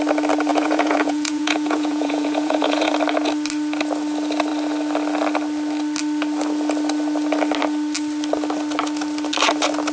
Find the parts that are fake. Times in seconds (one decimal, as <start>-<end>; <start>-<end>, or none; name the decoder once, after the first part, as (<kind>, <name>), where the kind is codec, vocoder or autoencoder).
0.5-2.9 (vocoder, Vocos)